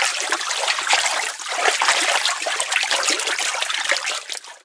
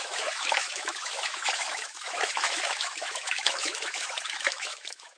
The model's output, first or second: second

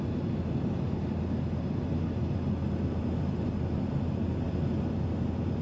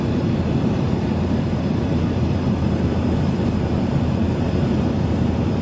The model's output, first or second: second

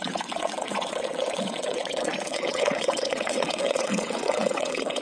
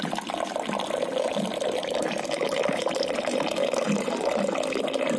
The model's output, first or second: first